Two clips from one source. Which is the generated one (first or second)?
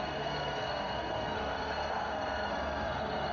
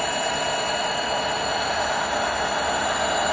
first